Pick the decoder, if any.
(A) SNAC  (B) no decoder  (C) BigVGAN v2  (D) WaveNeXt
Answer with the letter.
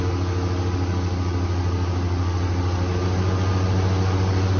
B